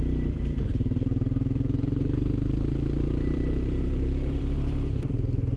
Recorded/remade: remade